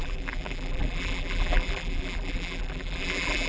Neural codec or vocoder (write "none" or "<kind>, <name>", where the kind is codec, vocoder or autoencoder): vocoder, BigVGAN v2